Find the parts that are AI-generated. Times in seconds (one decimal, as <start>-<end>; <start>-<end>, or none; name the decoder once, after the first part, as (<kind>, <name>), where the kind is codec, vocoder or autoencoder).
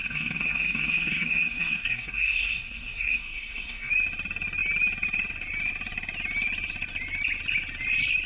0.0-3.9 (codec, SNAC)